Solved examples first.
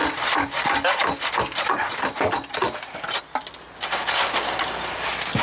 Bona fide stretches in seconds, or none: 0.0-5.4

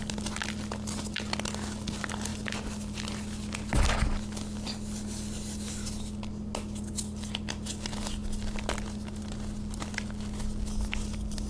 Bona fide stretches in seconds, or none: 0.0-11.5

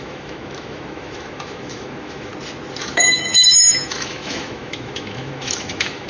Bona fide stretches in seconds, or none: 2.3-2.8

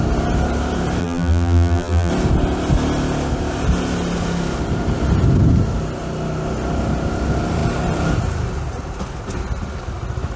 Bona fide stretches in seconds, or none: 0.0-1.0; 2.1-10.4

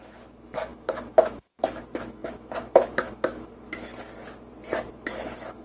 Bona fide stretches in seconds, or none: 3.9-4.9

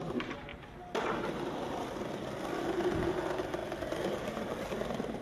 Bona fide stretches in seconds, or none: 0.0-5.2

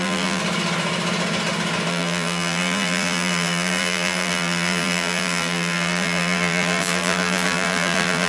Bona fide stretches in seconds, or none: 0.4-1.9

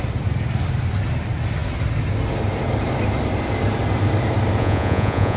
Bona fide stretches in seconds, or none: 0.0-4.6